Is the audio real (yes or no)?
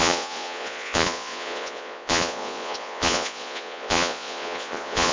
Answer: no